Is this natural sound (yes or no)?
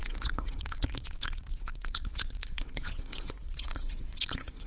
no